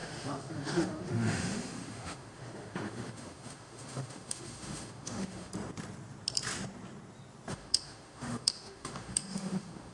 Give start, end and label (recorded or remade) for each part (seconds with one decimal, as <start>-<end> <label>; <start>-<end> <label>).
0.0-5.5 remade; 5.5-7.5 recorded; 7.5-9.9 remade